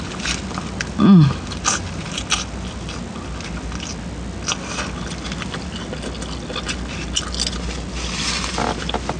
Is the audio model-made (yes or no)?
no